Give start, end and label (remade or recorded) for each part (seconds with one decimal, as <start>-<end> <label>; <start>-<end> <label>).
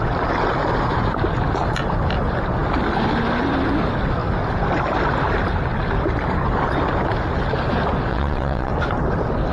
0.0-8.1 recorded; 8.1-8.7 remade; 8.7-9.5 recorded